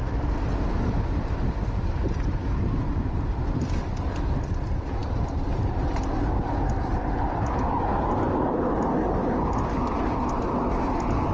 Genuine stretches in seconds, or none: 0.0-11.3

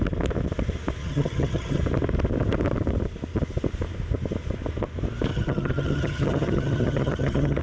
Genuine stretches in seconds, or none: 0.0-1.0; 1.8-5.3

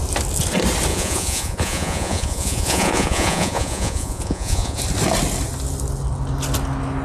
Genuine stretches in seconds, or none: 0.0-0.9; 4.8-7.0